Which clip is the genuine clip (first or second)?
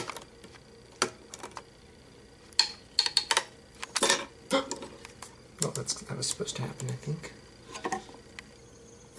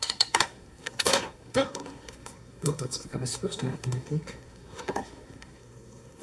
first